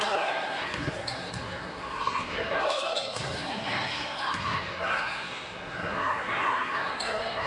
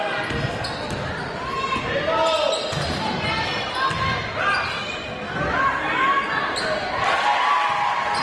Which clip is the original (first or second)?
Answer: second